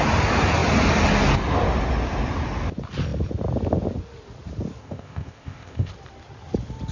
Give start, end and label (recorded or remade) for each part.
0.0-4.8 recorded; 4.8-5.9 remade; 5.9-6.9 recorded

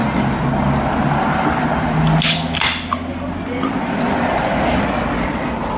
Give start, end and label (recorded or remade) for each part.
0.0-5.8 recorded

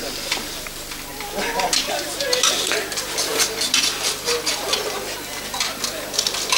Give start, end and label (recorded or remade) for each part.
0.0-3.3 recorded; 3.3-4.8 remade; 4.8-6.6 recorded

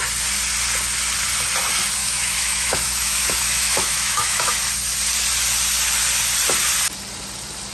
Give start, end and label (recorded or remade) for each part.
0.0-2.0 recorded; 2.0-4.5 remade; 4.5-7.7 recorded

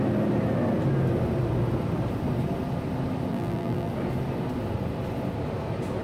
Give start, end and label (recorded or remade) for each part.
0.0-3.3 recorded; 3.3-3.9 remade; 3.9-6.0 recorded